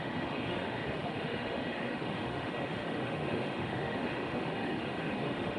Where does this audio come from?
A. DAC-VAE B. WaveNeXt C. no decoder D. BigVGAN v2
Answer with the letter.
A